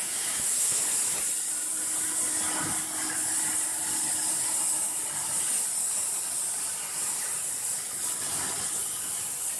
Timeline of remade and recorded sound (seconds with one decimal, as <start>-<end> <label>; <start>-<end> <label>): 0.0-0.8 remade; 0.8-9.6 recorded